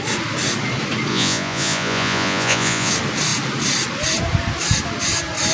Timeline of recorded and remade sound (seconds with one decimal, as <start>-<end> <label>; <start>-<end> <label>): 0.0-1.1 recorded; 1.1-2.9 remade; 2.9-5.5 recorded